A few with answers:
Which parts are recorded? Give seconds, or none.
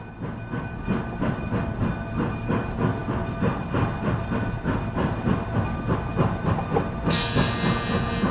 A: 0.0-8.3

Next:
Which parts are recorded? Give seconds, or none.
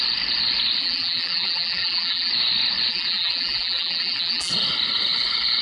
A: 0.0-0.8; 2.3-2.9; 4.5-5.6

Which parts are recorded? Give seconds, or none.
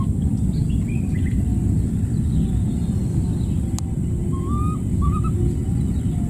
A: 0.0-6.3